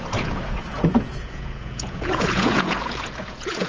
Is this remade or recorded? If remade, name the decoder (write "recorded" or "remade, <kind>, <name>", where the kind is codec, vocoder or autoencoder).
remade, vocoder, Vocos